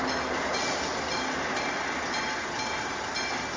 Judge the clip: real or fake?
real